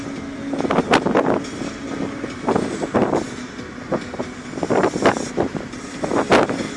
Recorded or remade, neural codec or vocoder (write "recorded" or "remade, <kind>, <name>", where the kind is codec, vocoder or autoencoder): recorded